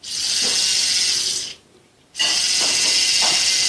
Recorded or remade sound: recorded